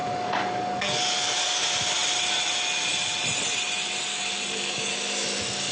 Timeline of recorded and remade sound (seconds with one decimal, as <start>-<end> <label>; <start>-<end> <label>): 0.0-1.6 remade; 1.6-4.1 recorded; 4.1-4.9 remade; 4.9-5.7 recorded